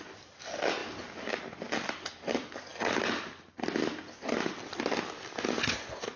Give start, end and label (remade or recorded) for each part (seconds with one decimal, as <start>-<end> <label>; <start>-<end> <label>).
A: 0.0-6.2 recorded

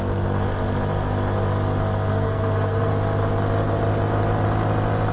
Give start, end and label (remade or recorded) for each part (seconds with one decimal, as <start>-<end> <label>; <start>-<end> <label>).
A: 0.0-2.1 recorded; 2.1-2.9 remade; 2.9-5.1 recorded

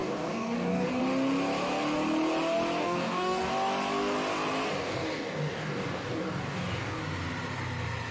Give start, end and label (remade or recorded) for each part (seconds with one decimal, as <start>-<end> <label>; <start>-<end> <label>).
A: 0.0-1.0 remade; 1.0-2.8 recorded; 2.8-3.5 remade; 3.5-4.8 recorded; 4.8-7.0 remade; 7.0-8.1 recorded

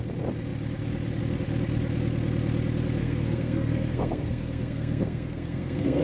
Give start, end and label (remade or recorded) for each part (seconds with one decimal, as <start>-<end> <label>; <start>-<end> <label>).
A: 0.0-3.0 recorded; 3.0-6.0 remade

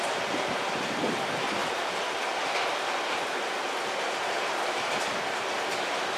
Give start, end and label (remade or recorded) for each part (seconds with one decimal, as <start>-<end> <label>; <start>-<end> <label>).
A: 0.0-6.2 recorded